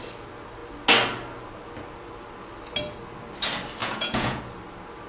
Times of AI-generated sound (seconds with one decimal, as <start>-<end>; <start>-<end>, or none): 3.8-4.4